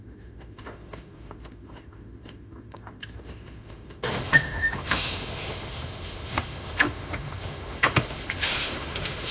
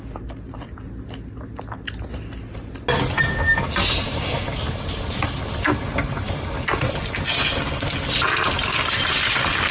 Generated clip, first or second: first